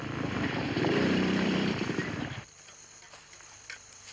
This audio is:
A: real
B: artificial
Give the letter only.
B